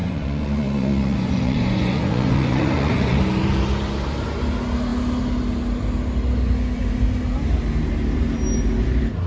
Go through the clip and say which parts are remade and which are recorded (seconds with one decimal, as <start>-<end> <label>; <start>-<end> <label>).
0.0-3.2 remade; 3.2-9.3 recorded